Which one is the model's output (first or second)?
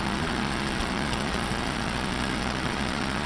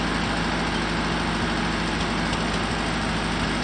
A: first